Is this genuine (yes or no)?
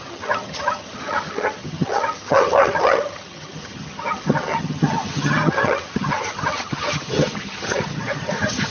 no